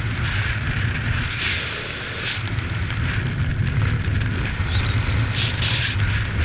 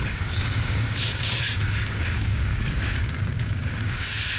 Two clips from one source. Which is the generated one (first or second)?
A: second